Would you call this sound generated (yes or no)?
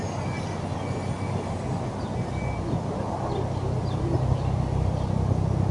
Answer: no